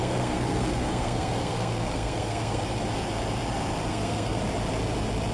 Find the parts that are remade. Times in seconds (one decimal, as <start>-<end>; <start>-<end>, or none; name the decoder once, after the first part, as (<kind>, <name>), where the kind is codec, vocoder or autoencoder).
0.0-2.6 (codec, SNAC); 3.9-4.4